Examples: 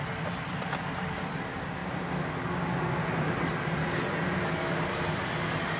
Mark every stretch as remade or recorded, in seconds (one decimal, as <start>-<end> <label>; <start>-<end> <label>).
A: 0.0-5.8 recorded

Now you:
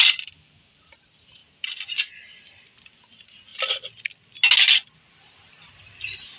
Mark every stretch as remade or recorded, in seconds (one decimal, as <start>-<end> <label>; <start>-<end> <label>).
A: 0.0-1.4 remade; 1.4-3.0 recorded; 3.0-3.5 remade; 3.5-5.1 recorded; 5.1-6.4 remade

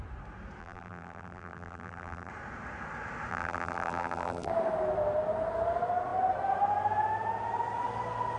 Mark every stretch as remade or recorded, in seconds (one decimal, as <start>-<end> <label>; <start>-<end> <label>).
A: 0.0-0.6 recorded; 0.6-2.3 remade; 2.3-3.3 recorded; 3.3-4.5 remade; 4.5-8.4 recorded

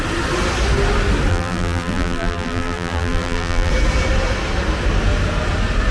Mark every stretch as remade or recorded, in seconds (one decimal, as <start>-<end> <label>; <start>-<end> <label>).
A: 0.0-1.3 recorded; 1.3-3.7 remade; 3.7-5.9 recorded

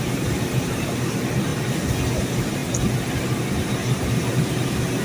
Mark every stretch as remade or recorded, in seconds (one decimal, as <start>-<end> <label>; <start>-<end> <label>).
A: 0.0-1.5 remade; 1.5-2.1 recorded; 2.1-2.6 remade; 2.6-4.0 recorded; 4.0-5.0 remade

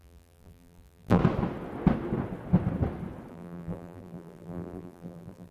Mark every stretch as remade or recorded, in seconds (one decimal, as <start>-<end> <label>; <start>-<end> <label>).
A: 0.0-1.2 remade; 1.2-3.3 recorded; 3.3-5.5 remade

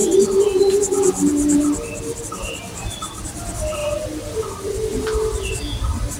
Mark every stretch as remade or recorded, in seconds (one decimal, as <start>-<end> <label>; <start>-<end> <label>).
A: 0.0-6.2 recorded

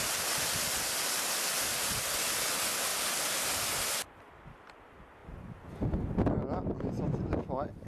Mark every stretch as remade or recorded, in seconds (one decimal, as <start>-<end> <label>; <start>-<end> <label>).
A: 0.0-7.9 recorded